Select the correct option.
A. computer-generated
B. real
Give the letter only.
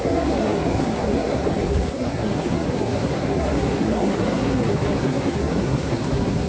A